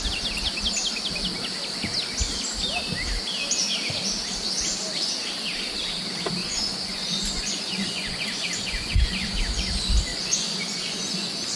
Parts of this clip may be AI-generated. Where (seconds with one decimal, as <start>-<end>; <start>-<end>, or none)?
6.4-9.4; 10.1-11.6